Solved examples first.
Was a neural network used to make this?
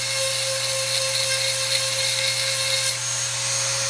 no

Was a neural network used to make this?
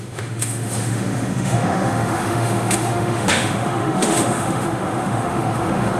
yes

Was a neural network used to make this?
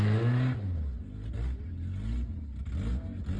no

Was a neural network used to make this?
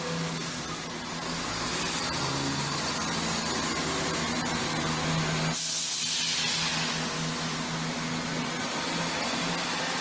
no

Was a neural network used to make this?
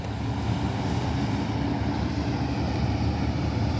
no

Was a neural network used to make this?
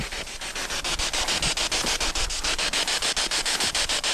no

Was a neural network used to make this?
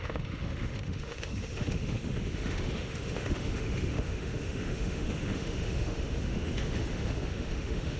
yes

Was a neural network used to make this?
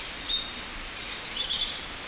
no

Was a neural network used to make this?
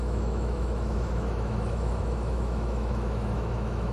yes